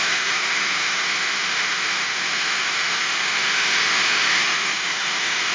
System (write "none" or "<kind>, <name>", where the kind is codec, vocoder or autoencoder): autoencoder, DAC-VAE